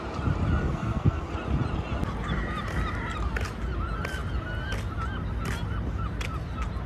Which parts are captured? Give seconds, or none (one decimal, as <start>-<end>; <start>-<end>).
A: 0.0-0.6; 1.3-6.9